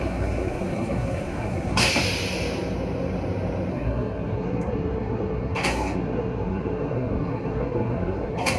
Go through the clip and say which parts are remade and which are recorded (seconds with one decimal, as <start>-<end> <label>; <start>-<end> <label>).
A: 0.0-1.9 remade; 1.9-3.7 recorded; 3.7-8.6 remade

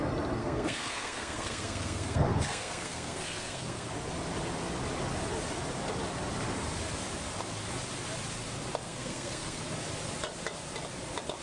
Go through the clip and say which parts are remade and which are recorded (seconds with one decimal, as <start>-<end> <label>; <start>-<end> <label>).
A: 0.0-0.4 recorded; 0.4-3.9 remade; 3.9-8.8 recorded; 8.8-9.6 remade; 9.6-11.4 recorded

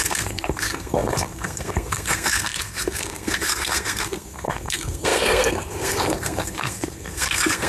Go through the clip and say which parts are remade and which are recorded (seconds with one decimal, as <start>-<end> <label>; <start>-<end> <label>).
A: 0.0-7.7 remade

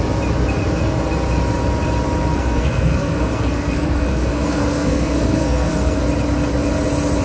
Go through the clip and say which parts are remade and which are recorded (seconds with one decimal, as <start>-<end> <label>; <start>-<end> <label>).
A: 0.0-2.3 recorded; 2.3-6.0 remade; 6.0-7.2 recorded

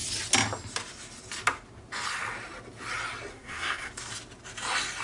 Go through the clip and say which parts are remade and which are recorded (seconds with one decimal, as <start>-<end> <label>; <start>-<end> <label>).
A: 0.0-3.3 recorded; 3.3-3.9 remade; 3.9-5.0 recorded

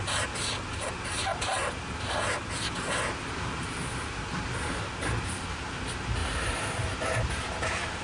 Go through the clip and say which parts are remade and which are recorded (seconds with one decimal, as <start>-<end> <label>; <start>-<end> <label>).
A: 0.0-8.0 recorded

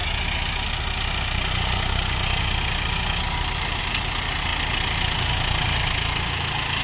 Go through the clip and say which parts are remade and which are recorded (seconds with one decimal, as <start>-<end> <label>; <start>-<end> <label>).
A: 0.0-6.8 recorded